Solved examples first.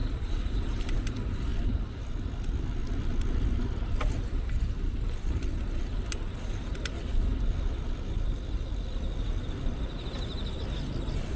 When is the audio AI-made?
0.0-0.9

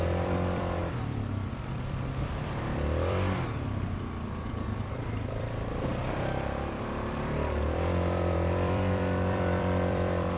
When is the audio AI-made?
0.0-10.4

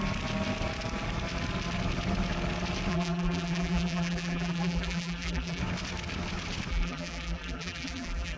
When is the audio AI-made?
2.9-5.6; 6.7-8.4

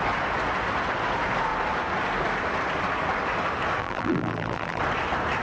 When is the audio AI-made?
3.8-4.8

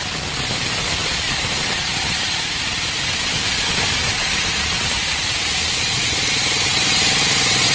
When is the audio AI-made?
1.0-3.0; 4.2-6.3

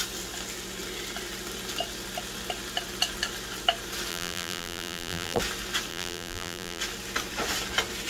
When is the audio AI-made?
4.1-5.4; 5.9-6.8

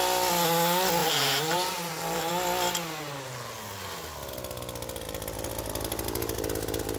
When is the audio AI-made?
1.0-2.3